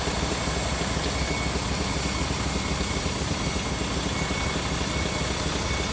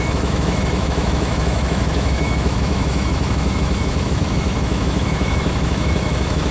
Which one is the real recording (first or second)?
first